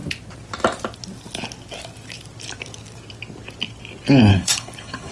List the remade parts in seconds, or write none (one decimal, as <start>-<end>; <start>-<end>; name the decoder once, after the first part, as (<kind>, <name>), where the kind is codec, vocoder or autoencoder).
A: 4.3-5.1 (codec, HILCodec)